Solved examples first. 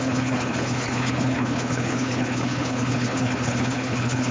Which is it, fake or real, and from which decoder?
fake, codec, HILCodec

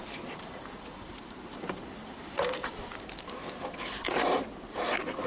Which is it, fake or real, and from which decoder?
fake, vocoder, BigVGAN v2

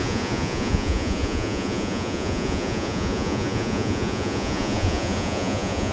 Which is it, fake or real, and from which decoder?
fake, vocoder, Vocos